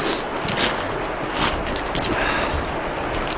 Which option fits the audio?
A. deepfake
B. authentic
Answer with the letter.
B